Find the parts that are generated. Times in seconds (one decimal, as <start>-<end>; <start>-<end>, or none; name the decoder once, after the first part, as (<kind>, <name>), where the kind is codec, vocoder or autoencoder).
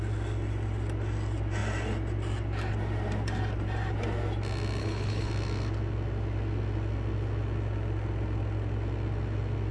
4.8-5.3 (codec, HILCodec)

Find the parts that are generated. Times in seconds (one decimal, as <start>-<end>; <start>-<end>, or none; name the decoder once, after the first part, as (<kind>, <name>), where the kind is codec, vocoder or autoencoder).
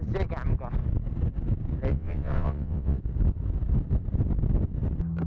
1.9-3.0 (vocoder, WaveNeXt)